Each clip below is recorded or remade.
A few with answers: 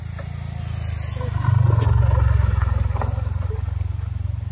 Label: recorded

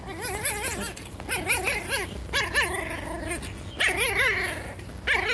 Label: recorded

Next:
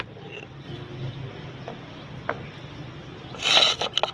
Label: recorded